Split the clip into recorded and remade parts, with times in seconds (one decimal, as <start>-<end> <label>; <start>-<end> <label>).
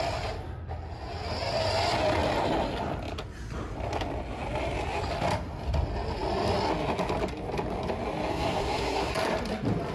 0.0-8.3 recorded; 8.3-9.1 remade; 9.1-9.9 recorded